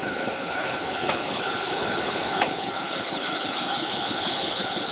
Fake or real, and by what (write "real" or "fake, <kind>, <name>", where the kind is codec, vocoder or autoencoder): fake, codec, HILCodec